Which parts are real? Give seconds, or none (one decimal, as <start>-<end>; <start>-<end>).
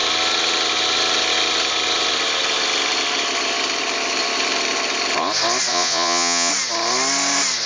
0.0-5.7; 6.5-7.7